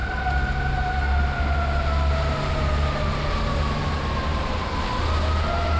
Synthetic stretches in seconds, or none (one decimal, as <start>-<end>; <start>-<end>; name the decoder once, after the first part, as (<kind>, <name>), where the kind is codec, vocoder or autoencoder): none